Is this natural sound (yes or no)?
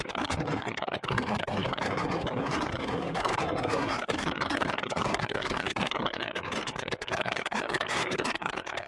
no